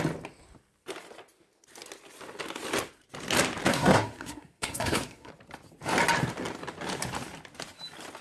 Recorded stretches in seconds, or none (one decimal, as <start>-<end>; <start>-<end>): 0.0-3.7; 5.3-8.2

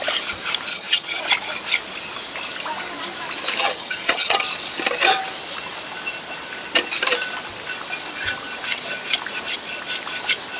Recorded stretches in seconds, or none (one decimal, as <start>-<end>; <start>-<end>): 0.0-0.7; 1.2-3.6; 4.4-10.6

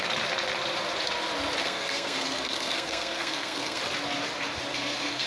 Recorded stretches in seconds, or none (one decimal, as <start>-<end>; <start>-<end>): 0.0-1.6; 3.8-4.7

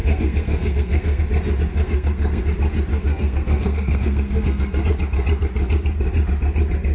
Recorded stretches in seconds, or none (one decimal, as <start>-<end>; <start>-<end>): 1.2-1.7; 2.4-2.9; 4.8-6.9

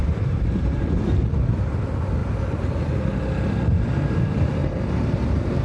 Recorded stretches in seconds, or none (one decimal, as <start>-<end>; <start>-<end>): 1.1-4.6

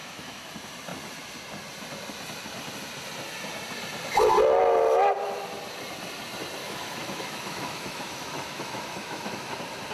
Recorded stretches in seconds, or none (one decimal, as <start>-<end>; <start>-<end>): 0.5-6.6; 9.5-9.9

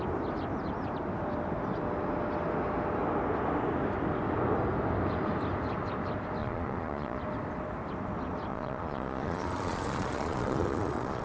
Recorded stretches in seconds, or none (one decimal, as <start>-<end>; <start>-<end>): 0.0-6.4; 7.2-8.5

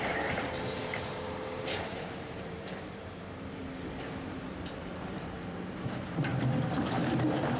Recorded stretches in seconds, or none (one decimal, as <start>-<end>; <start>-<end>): 3.6-5.1; 6.3-6.8